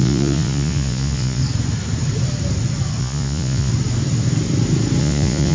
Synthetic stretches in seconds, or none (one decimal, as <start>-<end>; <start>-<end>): 0.0-1.4; 3.0-3.7; 5.0-5.5